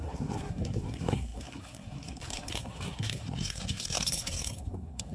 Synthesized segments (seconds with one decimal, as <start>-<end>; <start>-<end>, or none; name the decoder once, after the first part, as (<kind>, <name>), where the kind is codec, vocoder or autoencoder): 0.0-5.1 (codec, SNAC)

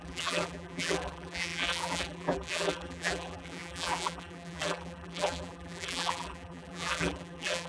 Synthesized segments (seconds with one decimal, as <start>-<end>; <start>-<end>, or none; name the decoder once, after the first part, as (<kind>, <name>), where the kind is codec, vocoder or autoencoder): 0.0-7.7 (vocoder, BigVGAN v2)

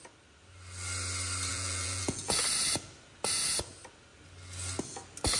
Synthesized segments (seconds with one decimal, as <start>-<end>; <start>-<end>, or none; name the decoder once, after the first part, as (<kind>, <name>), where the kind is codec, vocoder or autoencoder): 1.5-2.4 (vocoder, Vocos)

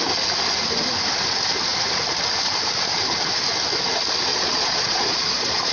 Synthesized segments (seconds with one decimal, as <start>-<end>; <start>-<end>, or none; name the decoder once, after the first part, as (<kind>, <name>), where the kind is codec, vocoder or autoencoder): 4.3-5.7 (vocoder, Vocos)

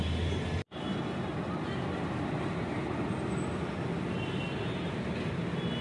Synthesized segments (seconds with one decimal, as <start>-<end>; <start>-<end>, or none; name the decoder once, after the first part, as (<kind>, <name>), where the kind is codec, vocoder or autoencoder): none

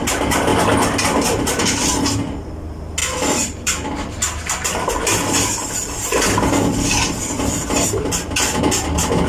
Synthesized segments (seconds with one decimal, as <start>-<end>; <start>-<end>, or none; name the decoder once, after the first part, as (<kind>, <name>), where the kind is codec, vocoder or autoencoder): 3.0-4.9 (vocoder, BigVGAN v2)